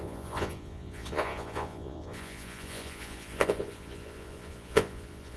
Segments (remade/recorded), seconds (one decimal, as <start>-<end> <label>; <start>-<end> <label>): 0.0-5.4 remade